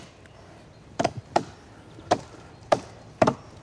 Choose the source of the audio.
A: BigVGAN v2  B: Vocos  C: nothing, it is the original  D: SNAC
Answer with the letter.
A